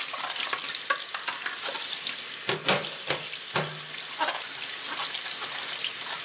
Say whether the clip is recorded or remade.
recorded